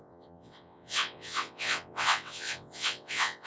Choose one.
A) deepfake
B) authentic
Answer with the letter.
A